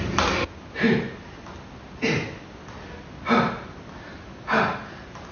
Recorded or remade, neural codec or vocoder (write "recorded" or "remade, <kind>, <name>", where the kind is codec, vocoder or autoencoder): recorded